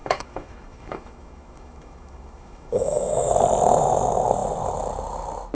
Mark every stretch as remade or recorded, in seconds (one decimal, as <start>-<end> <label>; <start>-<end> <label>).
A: 0.0-3.3 remade; 3.3-5.5 recorded